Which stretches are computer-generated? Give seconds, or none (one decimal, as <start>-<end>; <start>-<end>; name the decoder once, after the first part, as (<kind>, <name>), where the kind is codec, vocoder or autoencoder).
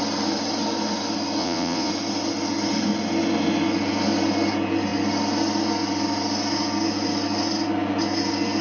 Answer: 1.4-1.9 (vocoder, Vocos)